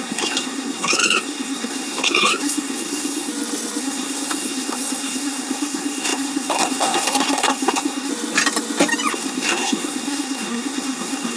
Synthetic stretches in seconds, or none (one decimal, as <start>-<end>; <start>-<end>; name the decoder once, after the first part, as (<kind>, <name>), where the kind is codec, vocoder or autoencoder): 0.0-3.3 (codec, SNAC); 3.8-8.1; 9.1-11.4